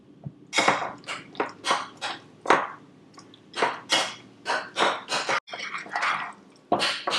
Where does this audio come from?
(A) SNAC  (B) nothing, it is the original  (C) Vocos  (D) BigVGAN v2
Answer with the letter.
B